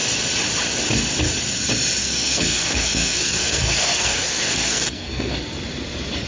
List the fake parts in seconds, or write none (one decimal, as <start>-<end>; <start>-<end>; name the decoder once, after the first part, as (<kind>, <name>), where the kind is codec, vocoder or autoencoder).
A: 2.0-5.3 (codec, SNAC)